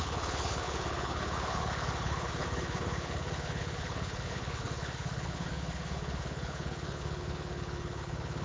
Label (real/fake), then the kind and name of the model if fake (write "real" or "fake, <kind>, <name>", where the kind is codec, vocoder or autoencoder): fake, codec, HILCodec